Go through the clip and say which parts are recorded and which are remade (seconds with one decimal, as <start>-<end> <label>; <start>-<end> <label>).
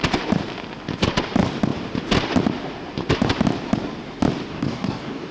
0.0-4.5 recorded; 4.5-5.3 remade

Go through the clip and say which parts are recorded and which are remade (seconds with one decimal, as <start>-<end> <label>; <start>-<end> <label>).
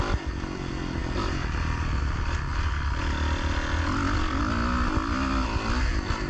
0.0-6.3 recorded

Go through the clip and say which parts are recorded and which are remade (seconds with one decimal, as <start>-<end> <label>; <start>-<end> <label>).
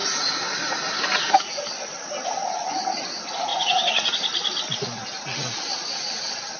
0.0-1.6 remade; 1.6-3.5 recorded; 3.5-4.1 remade; 4.1-6.6 recorded